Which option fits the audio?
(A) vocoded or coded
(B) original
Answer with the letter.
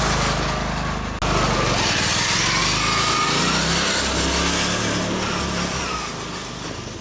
B